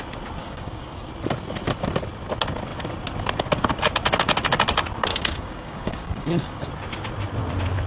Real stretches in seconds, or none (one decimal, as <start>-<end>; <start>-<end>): 0.0-0.4; 1.1-5.1; 6.7-7.9